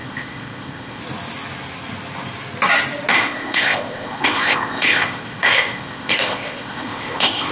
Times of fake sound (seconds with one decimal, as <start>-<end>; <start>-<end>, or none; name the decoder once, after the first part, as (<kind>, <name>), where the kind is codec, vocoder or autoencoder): 0.0-1.0 (codec, ZipCodec); 3.1-7.5